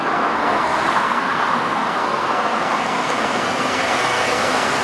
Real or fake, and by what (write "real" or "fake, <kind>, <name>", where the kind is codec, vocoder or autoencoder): fake, codec, SNAC